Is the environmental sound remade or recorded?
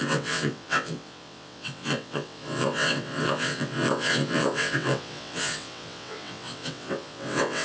remade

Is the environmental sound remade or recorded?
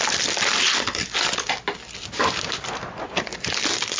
recorded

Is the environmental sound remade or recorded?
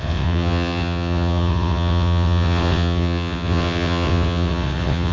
remade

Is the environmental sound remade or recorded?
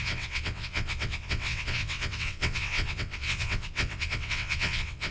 remade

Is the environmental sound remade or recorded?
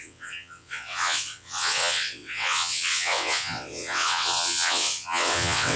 remade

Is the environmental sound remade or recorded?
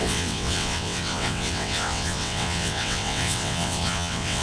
remade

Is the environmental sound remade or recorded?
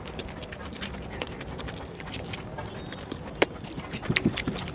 recorded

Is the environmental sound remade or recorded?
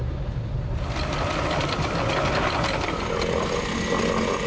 recorded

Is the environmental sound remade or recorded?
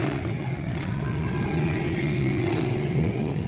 remade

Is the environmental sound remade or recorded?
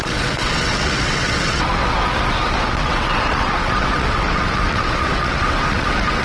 remade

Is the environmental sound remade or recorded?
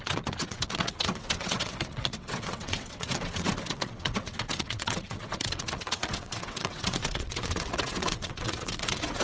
remade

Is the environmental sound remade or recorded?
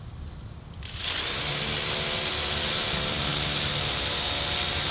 recorded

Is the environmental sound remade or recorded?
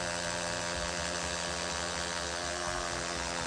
recorded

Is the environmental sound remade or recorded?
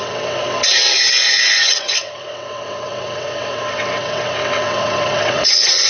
remade